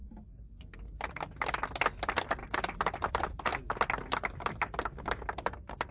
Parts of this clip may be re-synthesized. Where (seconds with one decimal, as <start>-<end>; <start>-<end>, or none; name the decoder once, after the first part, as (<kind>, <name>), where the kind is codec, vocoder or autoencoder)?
2.4-3.1 (vocoder, BigVGAN v2)